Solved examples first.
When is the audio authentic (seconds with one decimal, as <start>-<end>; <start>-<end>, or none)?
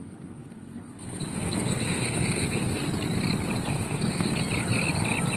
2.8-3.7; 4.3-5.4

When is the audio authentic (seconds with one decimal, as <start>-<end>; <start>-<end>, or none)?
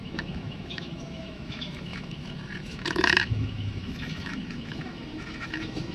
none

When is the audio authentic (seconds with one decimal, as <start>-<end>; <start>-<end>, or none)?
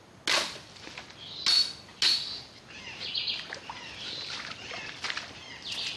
0.0-6.0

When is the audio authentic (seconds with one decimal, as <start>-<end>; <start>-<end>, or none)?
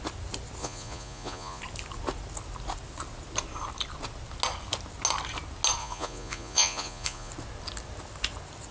0.0-0.6; 1.6-5.8; 7.3-8.7